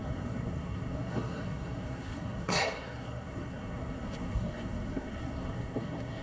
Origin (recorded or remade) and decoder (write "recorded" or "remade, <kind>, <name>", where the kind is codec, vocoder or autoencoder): remade, codec, SNAC